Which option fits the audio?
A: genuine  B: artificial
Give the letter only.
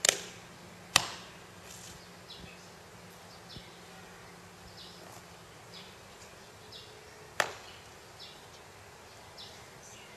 A